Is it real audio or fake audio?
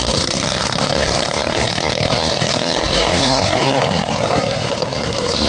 fake